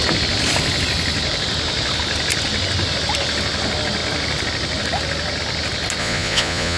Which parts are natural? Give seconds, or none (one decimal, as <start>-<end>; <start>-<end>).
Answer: 0.0-6.0